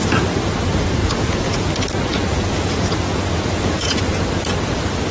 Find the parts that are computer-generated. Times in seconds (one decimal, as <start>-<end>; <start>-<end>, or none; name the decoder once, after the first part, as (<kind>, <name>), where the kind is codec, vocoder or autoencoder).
1.0-1.7 (vocoder, Vocos); 2.1-4.2